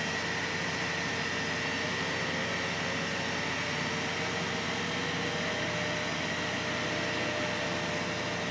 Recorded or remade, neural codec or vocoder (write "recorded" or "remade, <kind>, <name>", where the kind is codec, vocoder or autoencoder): recorded